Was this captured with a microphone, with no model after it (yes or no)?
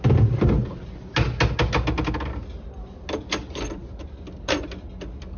yes